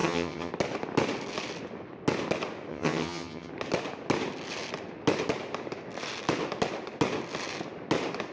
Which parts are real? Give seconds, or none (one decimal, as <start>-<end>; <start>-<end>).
0.5-2.7; 3.5-8.3